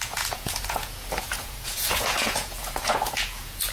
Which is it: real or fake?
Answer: fake